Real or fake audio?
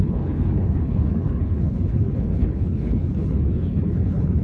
fake